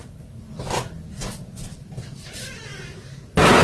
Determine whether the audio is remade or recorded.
recorded